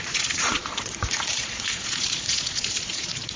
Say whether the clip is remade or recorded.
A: remade